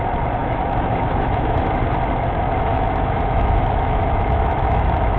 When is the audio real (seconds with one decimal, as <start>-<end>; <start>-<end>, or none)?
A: 0.0-0.4; 1.7-2.7